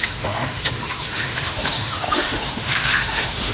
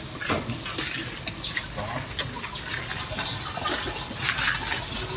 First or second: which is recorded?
second